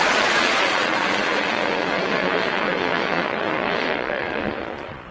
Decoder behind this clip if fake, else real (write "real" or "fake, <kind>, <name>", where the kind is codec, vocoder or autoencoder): fake, vocoder, Vocos